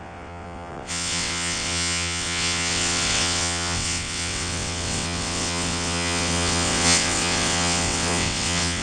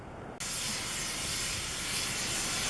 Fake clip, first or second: first